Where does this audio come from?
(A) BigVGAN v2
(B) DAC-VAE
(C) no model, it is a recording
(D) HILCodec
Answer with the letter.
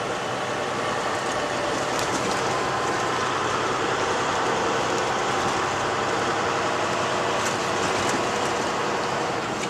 C